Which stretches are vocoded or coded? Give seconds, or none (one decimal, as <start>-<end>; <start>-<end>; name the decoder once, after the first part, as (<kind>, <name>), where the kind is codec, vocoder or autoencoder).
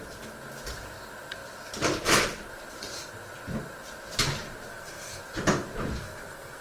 4.7-5.2 (codec, SNAC); 6.0-6.6